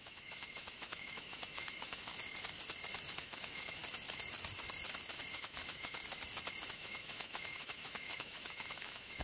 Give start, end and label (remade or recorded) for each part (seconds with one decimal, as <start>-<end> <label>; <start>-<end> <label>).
0.0-2.1 remade; 2.1-3.1 recorded; 3.1-3.8 remade; 3.8-5.3 recorded; 5.3-6.0 remade; 6.0-6.7 recorded; 6.7-9.2 remade